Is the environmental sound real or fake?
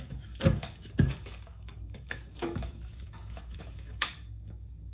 fake